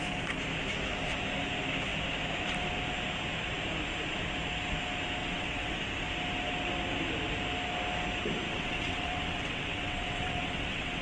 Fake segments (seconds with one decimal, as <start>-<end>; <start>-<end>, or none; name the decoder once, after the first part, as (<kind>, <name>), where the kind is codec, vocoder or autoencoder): 5.2-5.8 (vocoder, WaveNeXt); 8.5-11.0